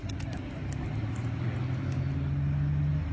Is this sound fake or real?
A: real